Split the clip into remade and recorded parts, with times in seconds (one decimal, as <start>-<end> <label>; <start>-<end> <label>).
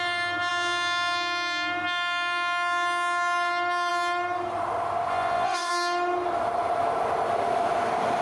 0.0-5.1 recorded; 5.1-5.7 remade; 5.7-8.2 recorded